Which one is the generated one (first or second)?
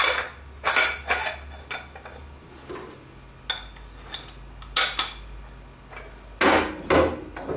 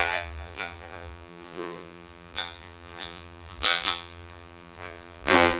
second